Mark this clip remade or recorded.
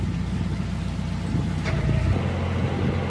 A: recorded